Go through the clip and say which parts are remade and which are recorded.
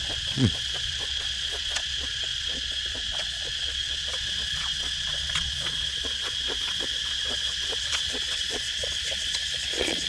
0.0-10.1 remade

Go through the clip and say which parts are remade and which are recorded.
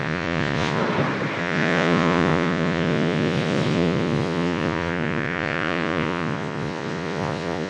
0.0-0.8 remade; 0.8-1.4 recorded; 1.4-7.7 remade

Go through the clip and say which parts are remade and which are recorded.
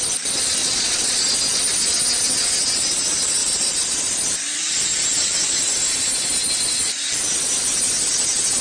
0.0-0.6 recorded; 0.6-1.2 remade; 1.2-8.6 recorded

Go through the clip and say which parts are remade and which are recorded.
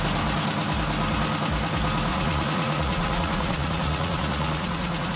0.0-2.1 recorded; 2.1-5.2 remade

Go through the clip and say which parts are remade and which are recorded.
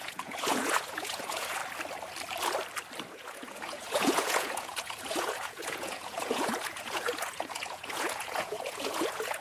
0.0-1.6 remade; 1.6-3.1 recorded; 3.1-9.4 remade